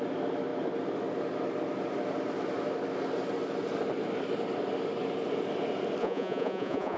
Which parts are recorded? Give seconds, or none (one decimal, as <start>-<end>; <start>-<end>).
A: 0.0-6.0